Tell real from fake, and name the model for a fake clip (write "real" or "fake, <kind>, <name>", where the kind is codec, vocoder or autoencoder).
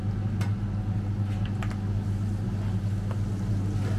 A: real